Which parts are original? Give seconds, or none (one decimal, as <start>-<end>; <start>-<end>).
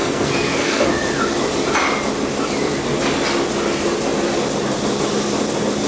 0.9-5.9